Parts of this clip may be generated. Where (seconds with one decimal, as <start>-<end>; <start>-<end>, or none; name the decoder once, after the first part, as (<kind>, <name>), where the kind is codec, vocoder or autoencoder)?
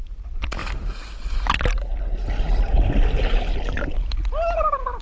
none